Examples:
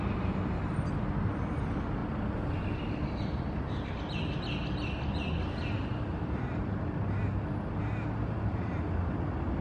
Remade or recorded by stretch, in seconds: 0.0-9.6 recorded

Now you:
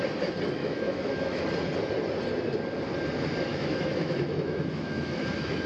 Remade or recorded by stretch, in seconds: 0.0-0.6 recorded; 0.6-1.4 remade; 1.4-3.5 recorded; 3.5-5.7 remade

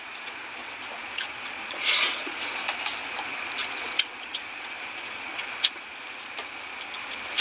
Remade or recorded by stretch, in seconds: 0.0-0.6 recorded; 0.6-2.8 remade; 2.8-3.6 recorded; 3.6-5.6 remade; 5.6-7.4 recorded

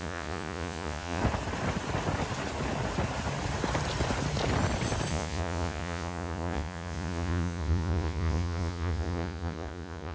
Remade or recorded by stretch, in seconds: 0.0-1.2 remade; 1.2-5.1 recorded; 5.1-10.1 remade

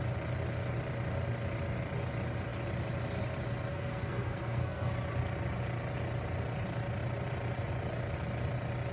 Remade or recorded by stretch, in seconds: 0.0-3.7 recorded; 3.7-4.9 remade; 4.9-8.9 recorded

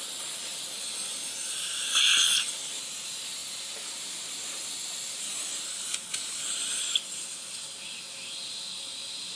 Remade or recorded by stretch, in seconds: 0.0-9.4 recorded